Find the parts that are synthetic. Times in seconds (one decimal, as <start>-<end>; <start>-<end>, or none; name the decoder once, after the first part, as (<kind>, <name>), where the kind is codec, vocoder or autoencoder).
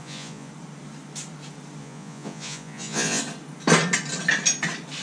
0.0-0.5 (vocoder, Vocos); 1.8-3.2